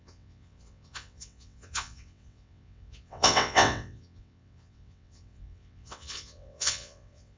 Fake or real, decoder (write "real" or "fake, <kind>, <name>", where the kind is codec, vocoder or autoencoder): fake, vocoder, WaveNeXt